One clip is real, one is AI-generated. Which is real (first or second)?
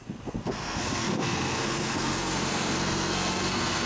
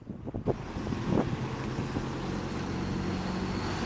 second